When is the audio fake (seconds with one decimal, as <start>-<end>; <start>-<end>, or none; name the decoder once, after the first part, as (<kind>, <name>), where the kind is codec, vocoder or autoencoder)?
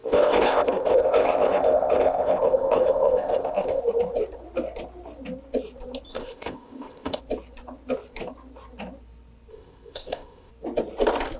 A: 0.0-3.8 (codec, ZipCodec); 6.1-7.2; 9.5-10.5